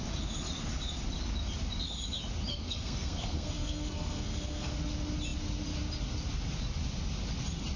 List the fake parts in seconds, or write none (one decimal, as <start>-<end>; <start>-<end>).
2.5-4.7